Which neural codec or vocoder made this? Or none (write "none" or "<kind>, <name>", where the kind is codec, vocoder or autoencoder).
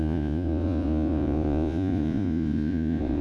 vocoder, Vocos